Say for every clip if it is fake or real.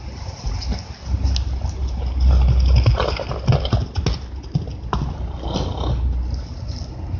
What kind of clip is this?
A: real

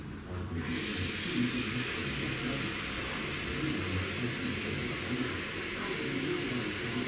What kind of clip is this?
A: real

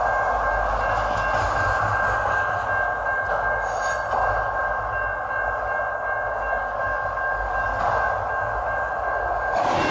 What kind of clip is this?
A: real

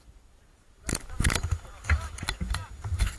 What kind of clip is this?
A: real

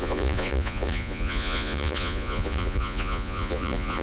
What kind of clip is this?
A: fake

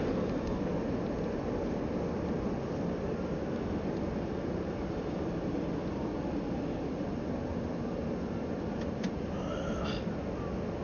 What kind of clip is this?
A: real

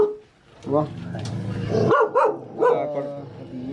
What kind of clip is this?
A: real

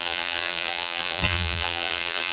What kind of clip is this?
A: fake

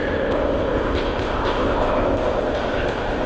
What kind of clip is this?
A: fake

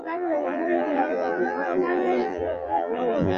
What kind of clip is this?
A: fake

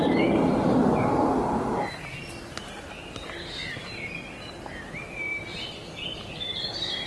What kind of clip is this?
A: real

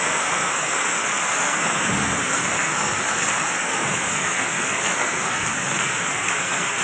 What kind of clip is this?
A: fake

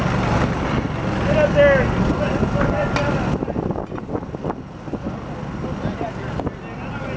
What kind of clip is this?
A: real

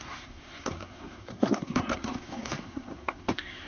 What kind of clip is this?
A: fake